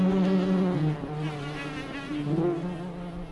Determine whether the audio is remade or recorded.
recorded